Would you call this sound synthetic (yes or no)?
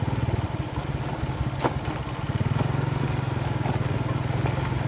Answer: no